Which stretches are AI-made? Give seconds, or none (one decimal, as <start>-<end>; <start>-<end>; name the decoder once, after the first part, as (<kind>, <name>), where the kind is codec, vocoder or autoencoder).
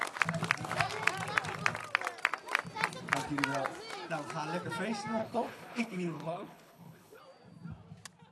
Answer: 5.2-7.2 (codec, HILCodec)